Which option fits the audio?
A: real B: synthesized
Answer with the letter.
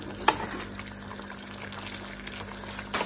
A